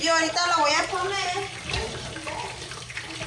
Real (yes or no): yes